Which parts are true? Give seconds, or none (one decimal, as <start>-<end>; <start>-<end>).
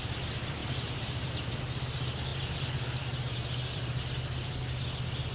0.0-0.6; 1.6-2.3; 4.0-5.3